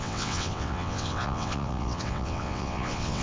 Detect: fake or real fake